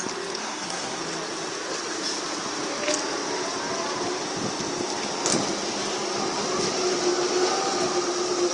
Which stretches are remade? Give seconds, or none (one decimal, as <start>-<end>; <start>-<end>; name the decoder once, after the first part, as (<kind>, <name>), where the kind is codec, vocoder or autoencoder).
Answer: 0.4-1.0 (codec, SNAC)